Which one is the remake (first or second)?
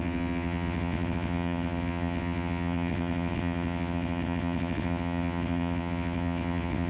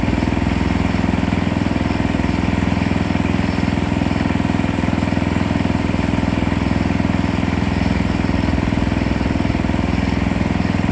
first